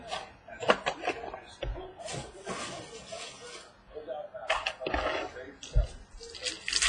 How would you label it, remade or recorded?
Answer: recorded